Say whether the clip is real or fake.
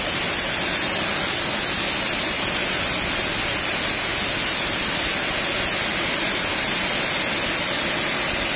real